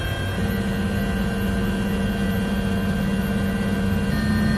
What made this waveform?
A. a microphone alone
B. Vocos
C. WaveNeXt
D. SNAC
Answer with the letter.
A